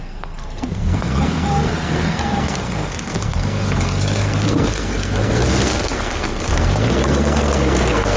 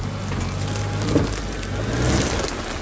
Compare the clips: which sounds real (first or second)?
second